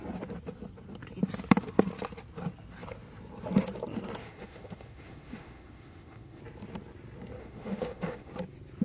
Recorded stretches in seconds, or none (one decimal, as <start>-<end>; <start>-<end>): 0.0-4.2; 6.4-7.4; 8.3-8.8